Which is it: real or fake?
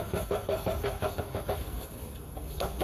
fake